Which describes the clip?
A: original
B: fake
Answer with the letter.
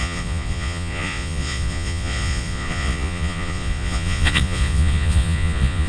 B